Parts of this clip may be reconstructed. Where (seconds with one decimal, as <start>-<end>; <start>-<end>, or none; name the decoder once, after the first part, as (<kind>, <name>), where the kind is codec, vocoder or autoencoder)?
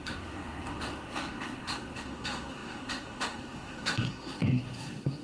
0.0-5.2 (codec, SNAC)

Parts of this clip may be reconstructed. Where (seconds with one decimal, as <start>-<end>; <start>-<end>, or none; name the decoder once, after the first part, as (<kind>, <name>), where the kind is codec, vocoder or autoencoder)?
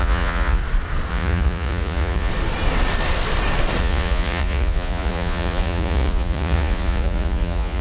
0.0-0.6 (vocoder, Vocos); 1.1-2.3; 3.8-7.8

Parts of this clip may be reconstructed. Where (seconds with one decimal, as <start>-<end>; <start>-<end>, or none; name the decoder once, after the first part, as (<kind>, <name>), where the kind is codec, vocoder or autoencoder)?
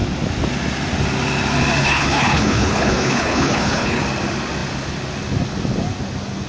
1.8-4.0 (codec, HILCodec)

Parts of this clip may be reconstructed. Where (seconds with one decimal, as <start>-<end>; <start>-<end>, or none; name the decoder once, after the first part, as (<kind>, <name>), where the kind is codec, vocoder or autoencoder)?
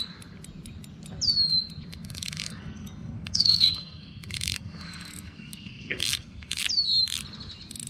1.9-6.6 (codec, SNAC)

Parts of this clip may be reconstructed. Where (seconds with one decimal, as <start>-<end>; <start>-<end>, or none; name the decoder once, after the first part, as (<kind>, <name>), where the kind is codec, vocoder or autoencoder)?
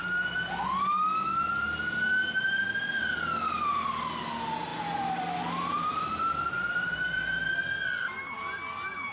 none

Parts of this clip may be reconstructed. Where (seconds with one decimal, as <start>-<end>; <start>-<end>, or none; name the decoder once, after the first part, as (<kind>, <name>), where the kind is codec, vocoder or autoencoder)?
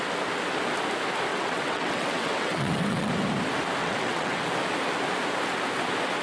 1.3-3.1 (vocoder, WaveNeXt); 3.8-4.4